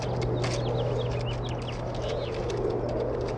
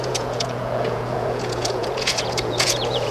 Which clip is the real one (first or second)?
first